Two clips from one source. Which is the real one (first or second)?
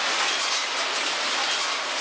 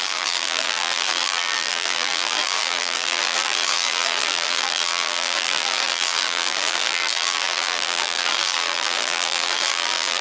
first